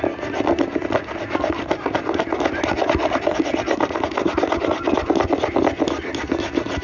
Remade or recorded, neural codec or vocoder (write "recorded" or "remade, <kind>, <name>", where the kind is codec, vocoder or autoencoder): recorded